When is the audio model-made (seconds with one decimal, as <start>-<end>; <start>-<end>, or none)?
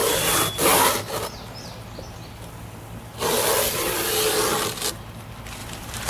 5.6-6.1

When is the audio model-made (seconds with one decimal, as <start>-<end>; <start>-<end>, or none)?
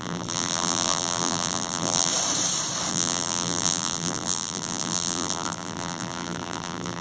0.0-2.1; 2.9-7.0